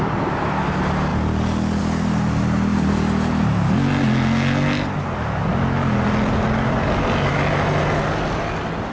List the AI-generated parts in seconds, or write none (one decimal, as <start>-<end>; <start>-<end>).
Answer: none